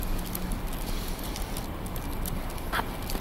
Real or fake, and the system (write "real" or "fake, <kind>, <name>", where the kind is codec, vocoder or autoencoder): real